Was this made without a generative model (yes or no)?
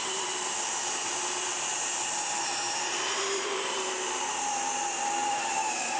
no